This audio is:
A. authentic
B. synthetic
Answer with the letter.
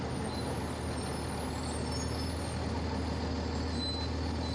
A